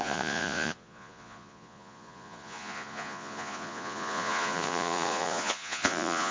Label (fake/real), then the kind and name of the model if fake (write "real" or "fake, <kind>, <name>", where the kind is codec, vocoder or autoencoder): fake, vocoder, Vocos